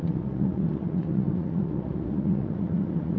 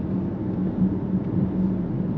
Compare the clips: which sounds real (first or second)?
second